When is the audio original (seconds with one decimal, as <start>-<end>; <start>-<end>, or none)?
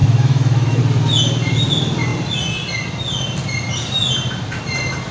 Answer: 0.8-5.1